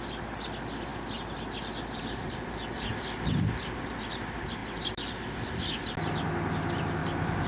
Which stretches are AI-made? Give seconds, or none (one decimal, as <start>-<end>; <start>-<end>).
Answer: none